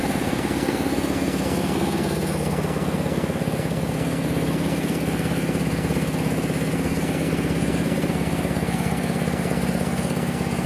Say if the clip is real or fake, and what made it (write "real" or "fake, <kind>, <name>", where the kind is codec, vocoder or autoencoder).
fake, codec, SNAC